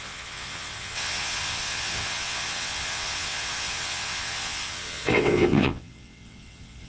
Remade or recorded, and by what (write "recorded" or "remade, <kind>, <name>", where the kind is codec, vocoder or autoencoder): remade, vocoder, WaveNeXt